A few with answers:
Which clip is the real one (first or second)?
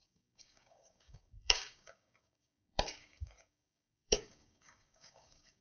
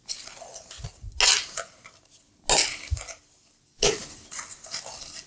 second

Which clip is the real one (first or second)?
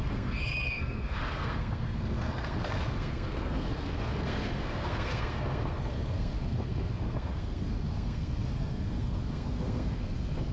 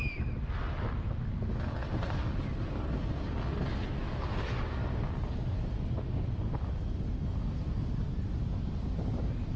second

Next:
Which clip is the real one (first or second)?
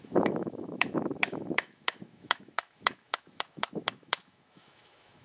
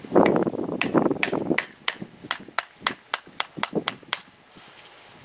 second